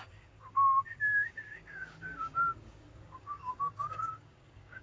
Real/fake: fake